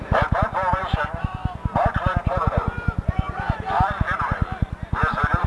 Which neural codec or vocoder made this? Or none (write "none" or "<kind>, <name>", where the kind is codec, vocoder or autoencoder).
vocoder, BigVGAN v2